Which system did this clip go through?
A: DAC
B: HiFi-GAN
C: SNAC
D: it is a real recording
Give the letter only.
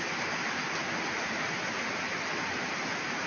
D